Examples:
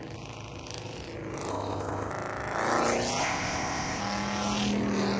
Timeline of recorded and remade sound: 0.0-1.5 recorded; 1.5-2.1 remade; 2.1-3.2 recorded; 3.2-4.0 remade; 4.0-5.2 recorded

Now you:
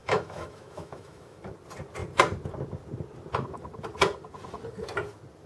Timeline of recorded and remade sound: 0.0-1.4 remade; 1.4-5.5 recorded

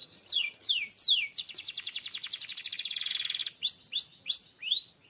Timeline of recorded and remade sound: 0.0-0.7 remade; 0.7-5.1 recorded

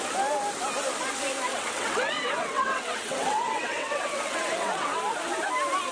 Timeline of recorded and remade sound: 0.0-1.5 recorded; 1.5-5.0 remade; 5.0-5.9 recorded

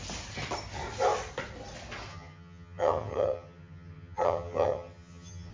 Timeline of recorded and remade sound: 0.0-2.1 recorded; 2.1-5.5 remade